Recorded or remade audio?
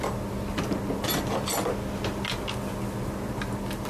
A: recorded